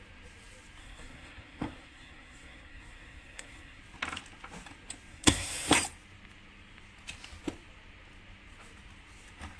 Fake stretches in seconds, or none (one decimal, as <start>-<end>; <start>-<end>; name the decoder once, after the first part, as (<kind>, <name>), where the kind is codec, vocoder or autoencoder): 0.8-3.8 (codec, SNAC); 5.1-5.7